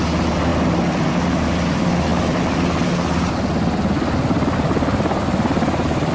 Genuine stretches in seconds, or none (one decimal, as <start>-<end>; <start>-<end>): 0.0-6.1